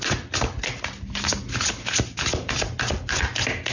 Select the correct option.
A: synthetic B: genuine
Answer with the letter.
B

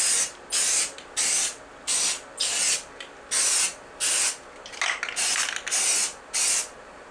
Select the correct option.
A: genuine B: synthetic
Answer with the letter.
A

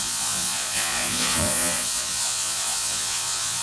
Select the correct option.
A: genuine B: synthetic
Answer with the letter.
B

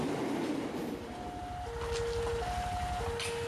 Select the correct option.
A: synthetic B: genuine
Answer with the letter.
B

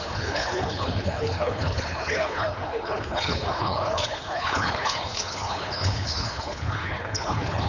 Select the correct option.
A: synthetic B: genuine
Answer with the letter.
A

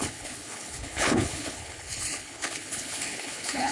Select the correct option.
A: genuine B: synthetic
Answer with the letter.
B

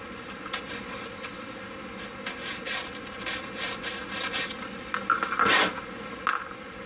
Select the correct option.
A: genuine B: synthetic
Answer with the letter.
A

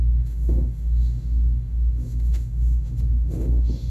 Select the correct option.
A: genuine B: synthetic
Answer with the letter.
B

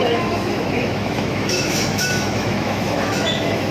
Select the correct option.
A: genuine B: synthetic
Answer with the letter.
B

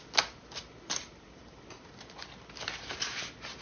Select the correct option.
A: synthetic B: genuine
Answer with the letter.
B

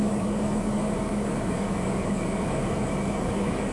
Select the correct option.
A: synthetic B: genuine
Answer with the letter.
A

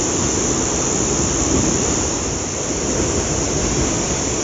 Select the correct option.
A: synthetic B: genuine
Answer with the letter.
B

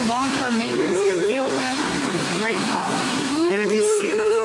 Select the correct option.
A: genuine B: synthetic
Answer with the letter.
B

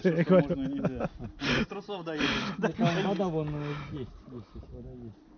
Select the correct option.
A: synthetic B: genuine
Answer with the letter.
B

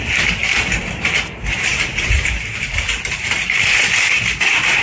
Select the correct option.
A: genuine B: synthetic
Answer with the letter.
B